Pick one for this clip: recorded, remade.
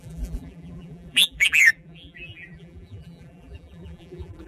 remade